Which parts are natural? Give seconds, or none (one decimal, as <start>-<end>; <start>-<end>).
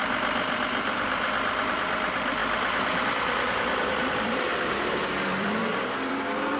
none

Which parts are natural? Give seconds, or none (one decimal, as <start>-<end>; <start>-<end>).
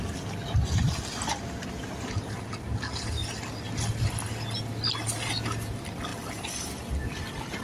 0.0-7.6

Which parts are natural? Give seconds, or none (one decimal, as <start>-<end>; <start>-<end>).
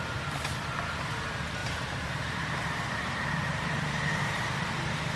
0.0-1.6; 4.7-5.2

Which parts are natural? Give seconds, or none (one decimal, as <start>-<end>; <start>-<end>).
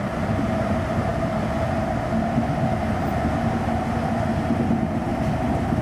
0.0-5.1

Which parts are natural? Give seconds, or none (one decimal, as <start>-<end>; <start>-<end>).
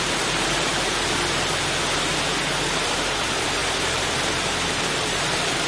0.7-2.6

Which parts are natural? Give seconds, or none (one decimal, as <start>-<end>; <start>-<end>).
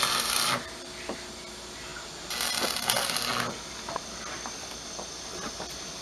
1.9-3.3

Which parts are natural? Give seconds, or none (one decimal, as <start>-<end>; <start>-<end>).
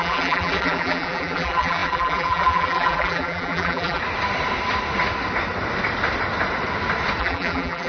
4.0-7.2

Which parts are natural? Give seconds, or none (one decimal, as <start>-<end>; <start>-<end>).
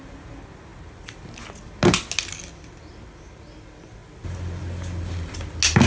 0.0-5.9